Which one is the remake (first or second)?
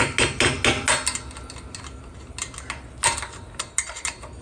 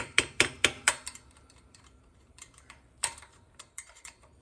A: second